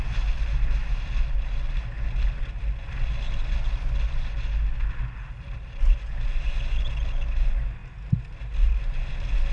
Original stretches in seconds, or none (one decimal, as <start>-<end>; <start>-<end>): 0.0-9.5